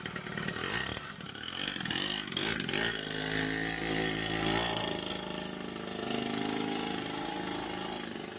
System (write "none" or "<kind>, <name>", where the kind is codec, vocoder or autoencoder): none